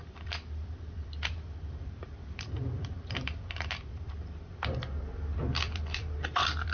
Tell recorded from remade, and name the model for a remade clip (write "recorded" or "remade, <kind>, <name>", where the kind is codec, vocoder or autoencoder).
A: remade, vocoder, BigVGAN v2